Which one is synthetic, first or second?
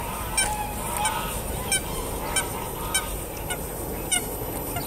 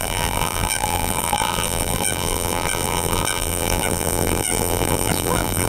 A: second